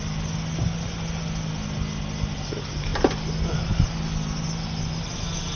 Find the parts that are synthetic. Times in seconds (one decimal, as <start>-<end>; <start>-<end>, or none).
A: none